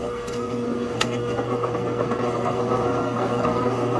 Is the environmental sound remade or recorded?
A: remade